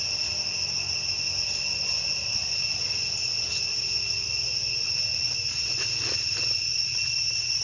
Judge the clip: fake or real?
real